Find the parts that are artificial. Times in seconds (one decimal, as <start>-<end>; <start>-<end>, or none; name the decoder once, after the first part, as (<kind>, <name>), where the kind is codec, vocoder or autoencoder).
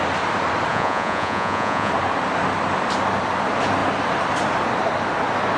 0.7-1.9 (vocoder, Vocos)